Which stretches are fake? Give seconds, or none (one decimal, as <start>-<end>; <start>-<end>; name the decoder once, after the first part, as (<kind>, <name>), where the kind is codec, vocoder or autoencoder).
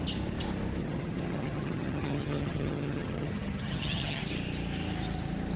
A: 0.8-4.2 (vocoder, HiFi-GAN)